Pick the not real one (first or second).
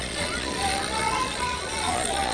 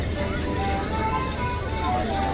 first